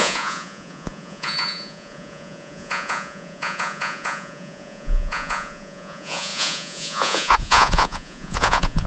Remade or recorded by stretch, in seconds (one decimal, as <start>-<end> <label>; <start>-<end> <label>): 0.0-8.9 remade